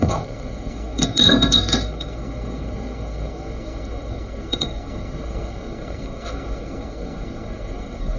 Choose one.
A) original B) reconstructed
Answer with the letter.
B